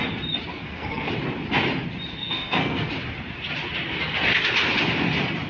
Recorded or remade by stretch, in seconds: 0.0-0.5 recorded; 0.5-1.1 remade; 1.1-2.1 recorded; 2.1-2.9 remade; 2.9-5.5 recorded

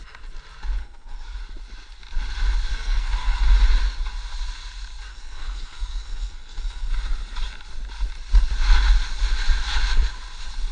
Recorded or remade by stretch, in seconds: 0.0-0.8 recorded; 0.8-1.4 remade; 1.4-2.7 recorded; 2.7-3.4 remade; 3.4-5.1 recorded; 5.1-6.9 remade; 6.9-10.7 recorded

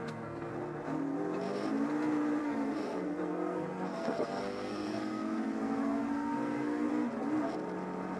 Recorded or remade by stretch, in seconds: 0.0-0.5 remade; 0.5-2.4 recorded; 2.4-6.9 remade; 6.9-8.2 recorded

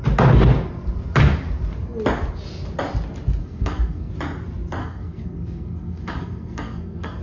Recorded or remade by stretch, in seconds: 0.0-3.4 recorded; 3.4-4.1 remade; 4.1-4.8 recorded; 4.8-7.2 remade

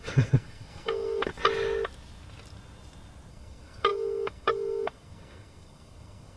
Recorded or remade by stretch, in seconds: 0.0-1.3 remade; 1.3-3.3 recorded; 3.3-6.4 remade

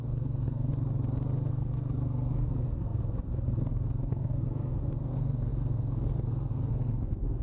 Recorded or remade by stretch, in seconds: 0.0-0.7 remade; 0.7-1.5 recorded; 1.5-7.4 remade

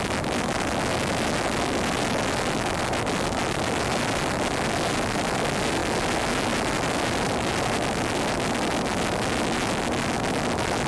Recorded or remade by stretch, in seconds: 0.0-10.9 recorded